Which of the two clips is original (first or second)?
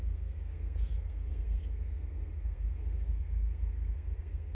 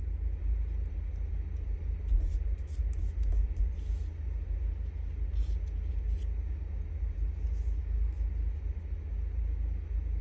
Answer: second